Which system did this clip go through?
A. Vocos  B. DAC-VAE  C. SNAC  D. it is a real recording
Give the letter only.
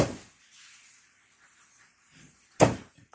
D